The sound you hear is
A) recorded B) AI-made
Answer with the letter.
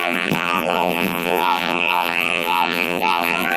B